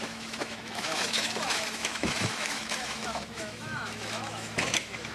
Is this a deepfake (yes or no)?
yes